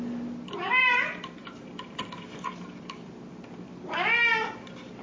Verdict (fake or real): real